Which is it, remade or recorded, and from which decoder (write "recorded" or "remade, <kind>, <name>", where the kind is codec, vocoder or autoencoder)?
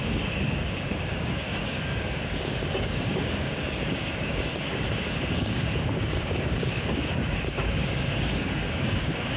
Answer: remade, codec, DAC